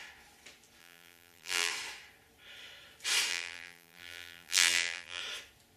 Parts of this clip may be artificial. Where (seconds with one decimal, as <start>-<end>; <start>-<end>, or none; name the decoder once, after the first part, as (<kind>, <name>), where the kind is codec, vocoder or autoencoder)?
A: 0.8-1.7 (vocoder, BigVGAN v2); 3.3-5.2